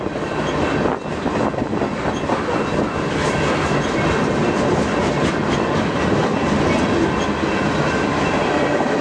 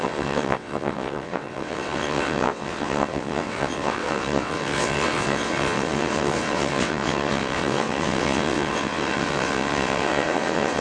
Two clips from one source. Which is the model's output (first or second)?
second